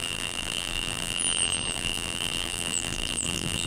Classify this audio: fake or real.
fake